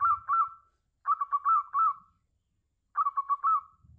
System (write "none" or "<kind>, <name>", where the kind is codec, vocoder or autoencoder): none